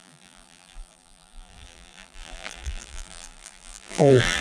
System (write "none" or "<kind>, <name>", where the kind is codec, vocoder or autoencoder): vocoder, BigVGAN v2